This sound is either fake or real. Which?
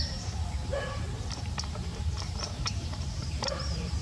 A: fake